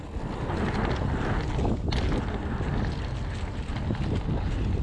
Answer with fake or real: real